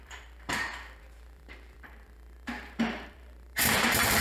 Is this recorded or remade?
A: remade